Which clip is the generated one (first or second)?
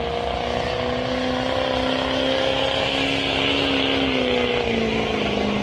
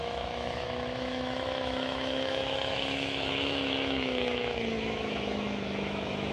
second